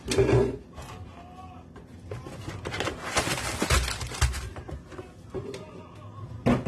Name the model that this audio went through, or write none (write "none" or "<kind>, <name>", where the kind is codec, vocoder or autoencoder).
none